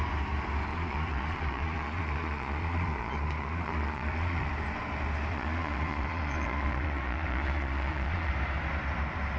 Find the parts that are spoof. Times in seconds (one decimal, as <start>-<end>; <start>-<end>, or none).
0.7-4.5; 5.3-8.3